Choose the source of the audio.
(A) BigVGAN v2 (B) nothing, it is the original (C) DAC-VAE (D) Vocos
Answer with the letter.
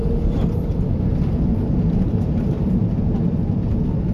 B